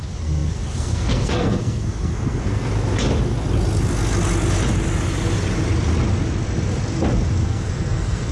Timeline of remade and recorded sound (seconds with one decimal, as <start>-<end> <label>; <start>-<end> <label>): 0.0-2.7 remade; 2.7-7.4 recorded; 7.4-8.3 remade